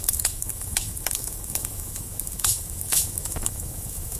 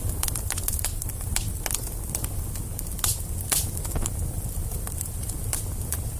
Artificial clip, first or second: first